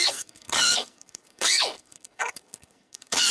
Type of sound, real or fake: fake